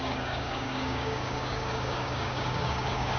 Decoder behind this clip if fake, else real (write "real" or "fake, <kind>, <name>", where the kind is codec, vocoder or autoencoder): fake, codec, DAC